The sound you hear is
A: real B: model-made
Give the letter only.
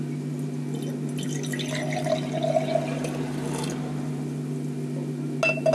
A